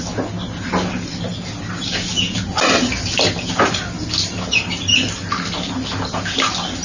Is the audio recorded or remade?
recorded